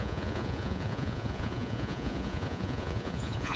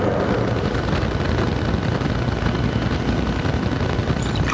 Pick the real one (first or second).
second